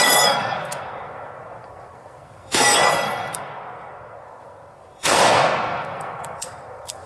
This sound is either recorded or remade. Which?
remade